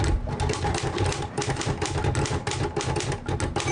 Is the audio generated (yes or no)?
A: no